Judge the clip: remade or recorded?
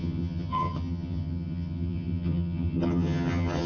remade